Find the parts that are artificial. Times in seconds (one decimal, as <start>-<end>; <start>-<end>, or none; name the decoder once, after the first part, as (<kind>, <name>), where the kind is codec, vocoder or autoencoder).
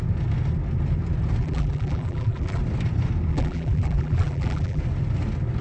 1.4-2.6 (vocoder, BigVGAN v2); 3.3-4.8